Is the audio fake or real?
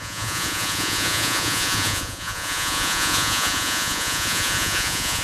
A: fake